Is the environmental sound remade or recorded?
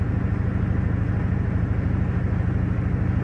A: recorded